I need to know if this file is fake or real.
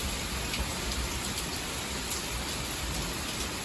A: fake